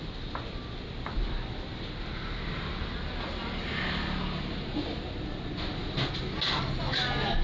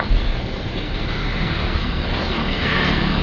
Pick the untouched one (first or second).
first